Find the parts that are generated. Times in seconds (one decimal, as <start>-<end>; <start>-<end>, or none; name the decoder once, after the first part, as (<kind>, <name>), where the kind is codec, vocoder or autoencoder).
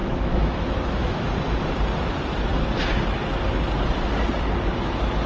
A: 0.0-1.3 (autoencoder, DAC-VAE)